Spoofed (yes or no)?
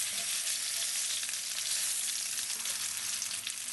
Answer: no